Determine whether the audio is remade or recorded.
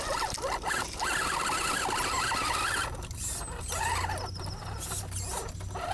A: recorded